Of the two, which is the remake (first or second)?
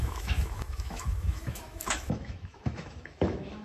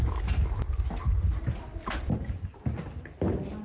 first